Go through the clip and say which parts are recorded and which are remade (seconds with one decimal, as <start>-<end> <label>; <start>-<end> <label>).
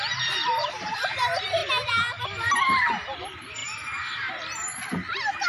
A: 0.0-1.6 remade; 1.6-2.2 recorded; 2.2-5.5 remade